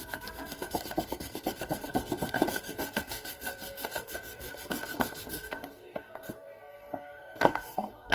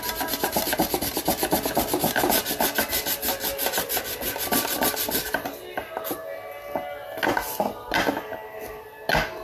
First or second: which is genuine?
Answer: second